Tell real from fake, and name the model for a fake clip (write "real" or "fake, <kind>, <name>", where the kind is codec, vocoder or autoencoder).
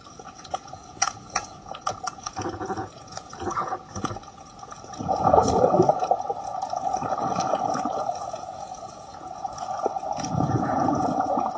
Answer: fake, vocoder, Vocos